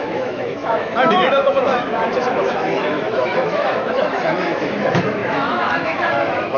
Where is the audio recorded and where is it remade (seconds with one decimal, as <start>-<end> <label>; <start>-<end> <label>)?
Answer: 0.0-6.6 remade